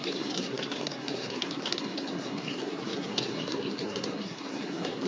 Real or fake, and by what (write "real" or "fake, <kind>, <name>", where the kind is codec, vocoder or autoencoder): fake, codec, SNAC